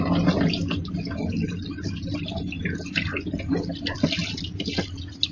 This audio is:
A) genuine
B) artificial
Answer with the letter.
A